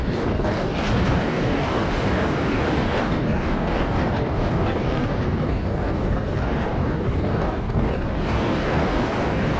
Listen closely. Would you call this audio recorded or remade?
remade